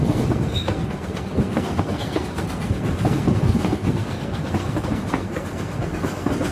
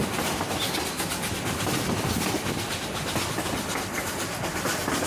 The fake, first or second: first